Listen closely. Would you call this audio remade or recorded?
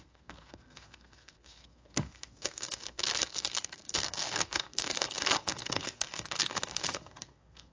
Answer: remade